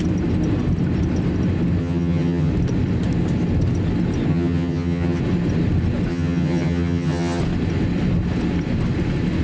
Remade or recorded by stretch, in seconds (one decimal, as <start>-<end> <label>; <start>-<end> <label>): 0.0-1.8 recorded; 1.8-2.5 remade; 2.5-4.3 recorded; 4.3-5.2 remade; 5.2-6.1 recorded; 6.1-7.4 remade; 7.4-9.4 recorded